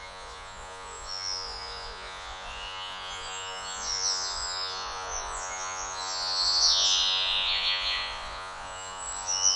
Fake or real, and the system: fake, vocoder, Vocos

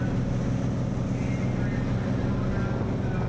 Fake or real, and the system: real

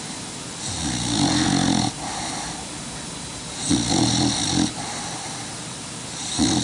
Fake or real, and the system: real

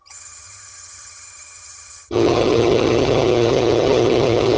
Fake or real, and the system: fake, vocoder, HiFi-GAN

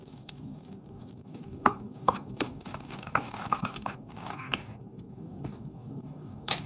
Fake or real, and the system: fake, codec, DAC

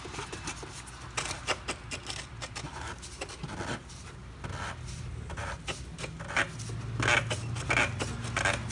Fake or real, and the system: real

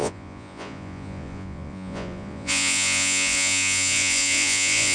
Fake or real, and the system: fake, vocoder, Vocos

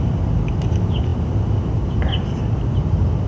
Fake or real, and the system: real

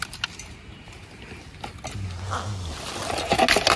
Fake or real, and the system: real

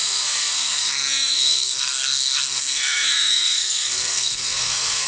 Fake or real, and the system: fake, codec, SNAC